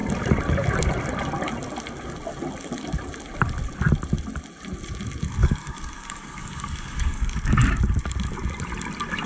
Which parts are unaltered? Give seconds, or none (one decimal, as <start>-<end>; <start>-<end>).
0.0-5.4; 7.7-9.3